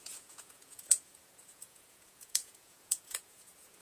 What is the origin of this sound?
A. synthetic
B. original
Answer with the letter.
A